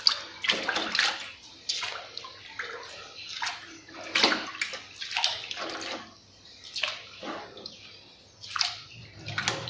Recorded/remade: recorded